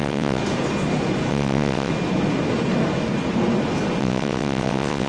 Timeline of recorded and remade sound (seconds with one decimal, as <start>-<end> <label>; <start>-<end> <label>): 0.0-0.4 remade; 0.4-1.3 recorded; 1.3-1.9 remade; 1.9-4.0 recorded; 4.0-5.1 remade